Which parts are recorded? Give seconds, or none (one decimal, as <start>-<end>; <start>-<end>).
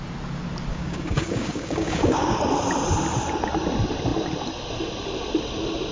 0.0-0.7; 2.4-5.9